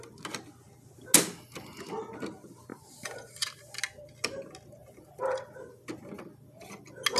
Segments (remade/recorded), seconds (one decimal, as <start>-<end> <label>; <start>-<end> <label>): 0.0-2.7 recorded; 2.7-3.6 remade; 3.6-4.8 recorded; 4.8-5.7 remade; 5.7-7.2 recorded